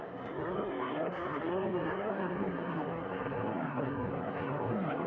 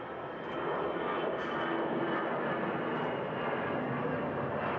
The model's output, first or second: first